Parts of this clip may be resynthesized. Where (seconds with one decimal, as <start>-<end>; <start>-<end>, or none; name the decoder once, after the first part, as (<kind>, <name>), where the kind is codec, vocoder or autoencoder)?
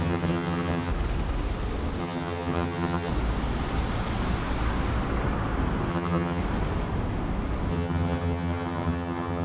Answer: 0.0-0.9 (vocoder, HiFi-GAN); 2.0-3.1; 5.9-6.4; 7.7-9.4